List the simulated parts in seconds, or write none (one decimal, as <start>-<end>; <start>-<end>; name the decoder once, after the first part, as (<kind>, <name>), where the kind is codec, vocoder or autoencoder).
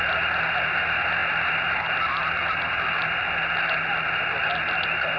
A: none